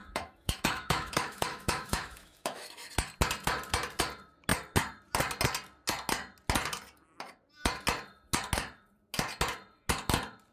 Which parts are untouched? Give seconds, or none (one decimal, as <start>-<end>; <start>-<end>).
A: 2.9-10.5

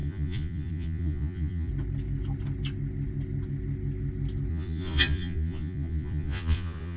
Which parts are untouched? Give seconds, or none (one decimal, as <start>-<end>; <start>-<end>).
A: 1.7-4.5

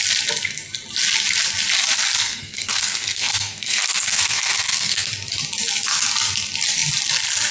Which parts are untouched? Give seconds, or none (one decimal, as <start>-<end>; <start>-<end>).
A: 0.0-2.2; 5.1-7.5

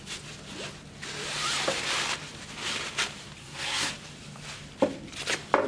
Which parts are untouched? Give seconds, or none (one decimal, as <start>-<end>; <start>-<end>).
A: 0.0-3.4; 3.9-5.7